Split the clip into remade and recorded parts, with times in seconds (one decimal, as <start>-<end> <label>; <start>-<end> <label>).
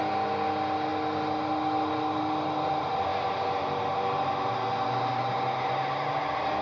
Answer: 0.0-6.6 recorded